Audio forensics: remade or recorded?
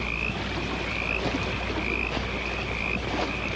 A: recorded